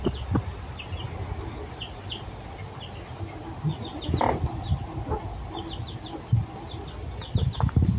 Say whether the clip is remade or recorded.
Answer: recorded